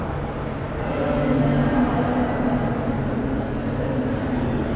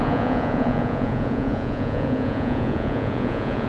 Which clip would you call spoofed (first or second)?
second